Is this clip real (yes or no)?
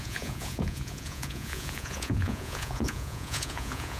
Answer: no